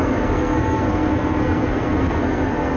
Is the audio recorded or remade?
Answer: remade